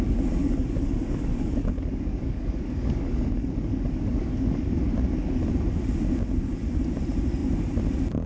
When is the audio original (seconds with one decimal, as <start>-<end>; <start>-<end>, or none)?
0.0-0.4; 4.7-8.3